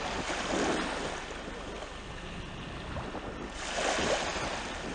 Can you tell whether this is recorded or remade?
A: recorded